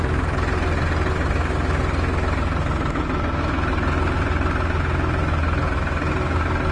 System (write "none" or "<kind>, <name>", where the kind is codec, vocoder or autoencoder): none